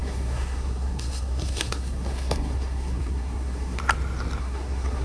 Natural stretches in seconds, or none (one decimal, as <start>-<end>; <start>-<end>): 3.8-4.4